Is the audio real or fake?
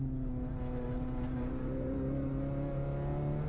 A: real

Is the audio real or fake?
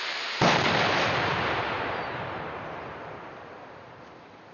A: fake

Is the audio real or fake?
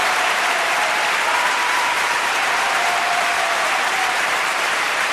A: fake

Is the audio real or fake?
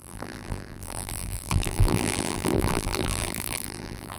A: fake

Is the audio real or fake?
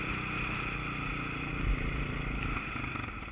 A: real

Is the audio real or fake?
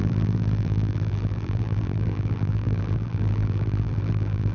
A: fake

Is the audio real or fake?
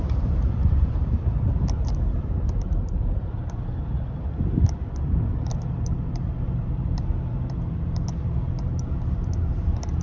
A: fake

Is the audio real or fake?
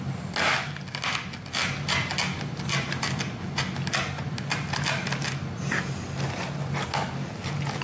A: real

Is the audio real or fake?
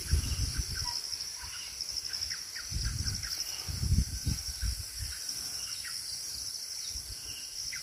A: real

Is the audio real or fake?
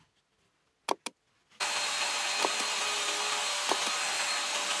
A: real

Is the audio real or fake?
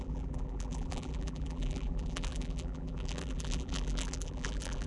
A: fake